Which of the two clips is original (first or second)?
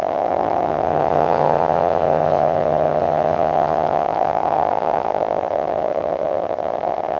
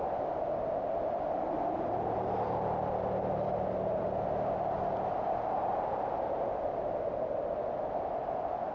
second